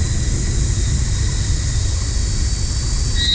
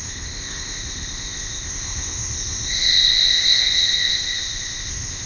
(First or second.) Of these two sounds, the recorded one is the first